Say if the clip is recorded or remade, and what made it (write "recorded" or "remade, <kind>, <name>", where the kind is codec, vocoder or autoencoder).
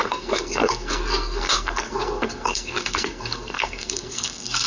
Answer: remade, codec, SNAC